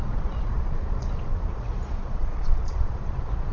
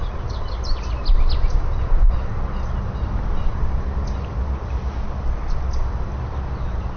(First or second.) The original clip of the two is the second